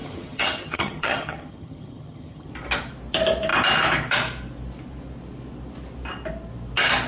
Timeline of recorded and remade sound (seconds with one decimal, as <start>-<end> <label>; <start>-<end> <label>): 0.0-2.5 remade; 2.5-7.1 recorded